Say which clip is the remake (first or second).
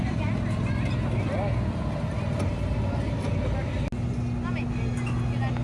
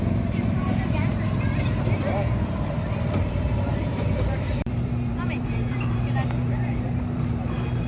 second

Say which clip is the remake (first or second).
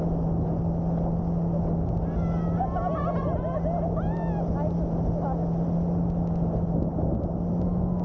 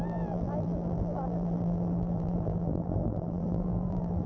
second